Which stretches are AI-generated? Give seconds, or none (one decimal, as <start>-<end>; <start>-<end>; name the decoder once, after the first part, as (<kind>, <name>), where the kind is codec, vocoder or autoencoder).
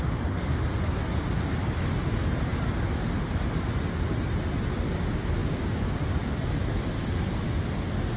5.4-7.5 (vocoder, BigVGAN v2)